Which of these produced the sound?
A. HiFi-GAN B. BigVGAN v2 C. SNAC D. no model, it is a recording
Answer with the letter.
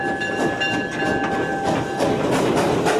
D